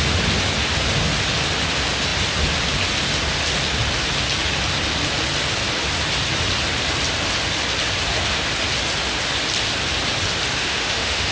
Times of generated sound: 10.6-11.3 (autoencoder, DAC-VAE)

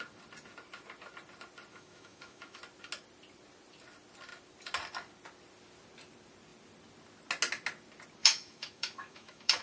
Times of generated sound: 1.7-2.6 (autoencoder, DAC-VAE); 8.2-9.6

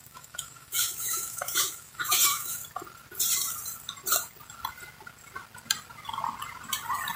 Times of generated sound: 0.0-2.6 (autoencoder, DAC-VAE)

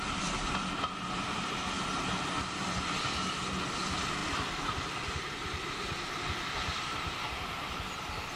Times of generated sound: 4.2-7.3 (vocoder, BigVGAN v2)

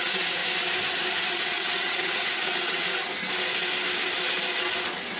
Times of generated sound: 0.0-0.4 (vocoder, WaveNeXt); 1.3-3.1

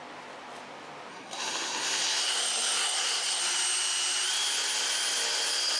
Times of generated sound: 1.1-3.4 (codec, SNAC)

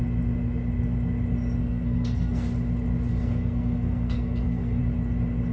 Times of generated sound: 1.6-2.5 (codec, SNAC); 3.1-4.8